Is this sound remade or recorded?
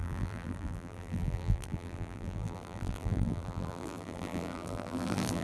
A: remade